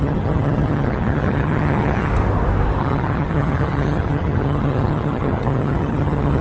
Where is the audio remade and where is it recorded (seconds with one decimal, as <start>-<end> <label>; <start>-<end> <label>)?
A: 0.0-2.1 remade; 2.1-2.8 recorded; 2.8-6.4 remade